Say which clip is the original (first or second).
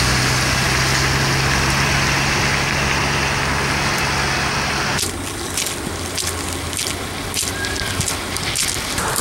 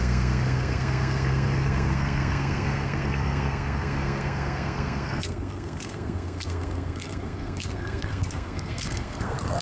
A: first